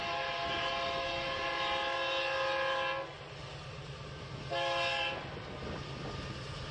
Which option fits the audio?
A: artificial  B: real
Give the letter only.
B